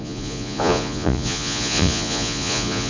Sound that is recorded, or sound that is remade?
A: remade